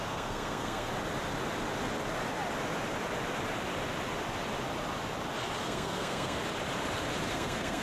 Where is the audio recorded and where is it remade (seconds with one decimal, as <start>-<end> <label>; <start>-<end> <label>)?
0.0-0.9 remade; 0.9-5.6 recorded; 5.6-6.4 remade; 6.4-7.3 recorded; 7.3-7.8 remade